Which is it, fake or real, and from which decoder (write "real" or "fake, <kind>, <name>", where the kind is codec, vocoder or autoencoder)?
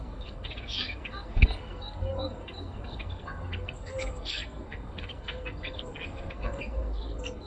fake, codec, SNAC